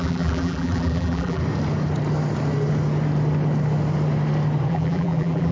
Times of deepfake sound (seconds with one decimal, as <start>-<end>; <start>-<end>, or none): 0.0-1.4; 4.7-5.5